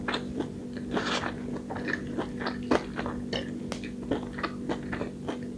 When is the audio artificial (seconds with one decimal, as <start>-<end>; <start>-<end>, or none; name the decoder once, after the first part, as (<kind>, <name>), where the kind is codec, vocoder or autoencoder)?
none